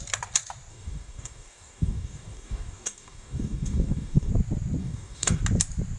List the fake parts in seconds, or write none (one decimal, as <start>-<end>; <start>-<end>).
0.7-4.3; 4.8-5.4